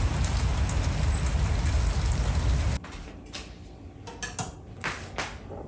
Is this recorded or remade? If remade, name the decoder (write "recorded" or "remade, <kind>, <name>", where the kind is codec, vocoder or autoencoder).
recorded